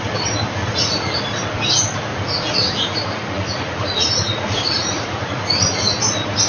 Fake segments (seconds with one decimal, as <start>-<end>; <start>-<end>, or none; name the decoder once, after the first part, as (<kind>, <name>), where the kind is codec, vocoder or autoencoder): 0.6-1.2 (vocoder, Vocos); 2.1-6.0